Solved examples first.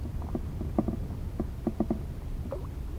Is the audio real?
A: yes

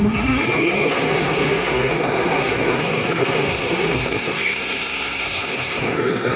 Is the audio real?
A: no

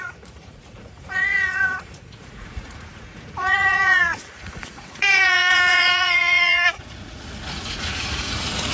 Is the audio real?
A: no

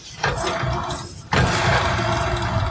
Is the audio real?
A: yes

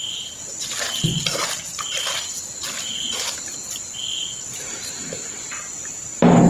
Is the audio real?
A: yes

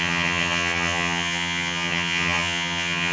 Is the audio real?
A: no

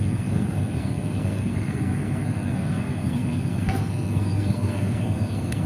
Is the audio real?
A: no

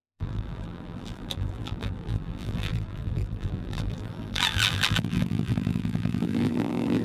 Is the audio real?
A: no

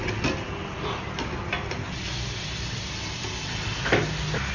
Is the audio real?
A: yes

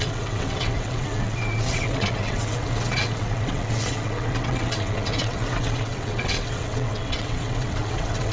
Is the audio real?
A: no